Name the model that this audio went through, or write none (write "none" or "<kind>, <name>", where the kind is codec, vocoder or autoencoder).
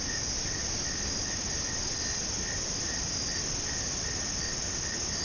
none